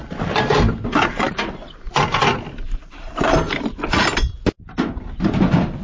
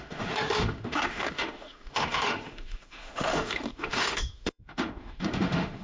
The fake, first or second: second